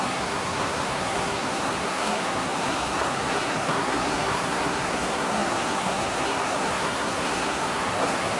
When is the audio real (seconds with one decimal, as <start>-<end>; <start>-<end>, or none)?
none